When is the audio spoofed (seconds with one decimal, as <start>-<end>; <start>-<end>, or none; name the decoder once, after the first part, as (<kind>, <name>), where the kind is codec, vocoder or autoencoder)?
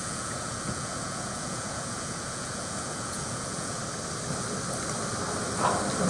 0.0-3.8 (vocoder, Vocos)